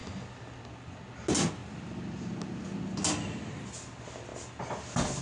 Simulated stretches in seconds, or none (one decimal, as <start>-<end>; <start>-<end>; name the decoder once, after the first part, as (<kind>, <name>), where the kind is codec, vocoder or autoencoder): none